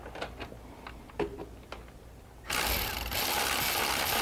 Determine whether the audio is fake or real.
real